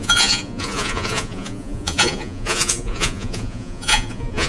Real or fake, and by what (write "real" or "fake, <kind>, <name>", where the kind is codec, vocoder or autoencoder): fake, vocoder, Vocos